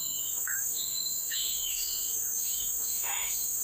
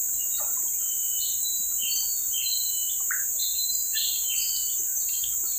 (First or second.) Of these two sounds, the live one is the second